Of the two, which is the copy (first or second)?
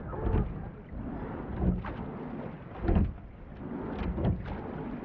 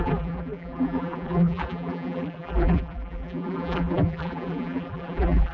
second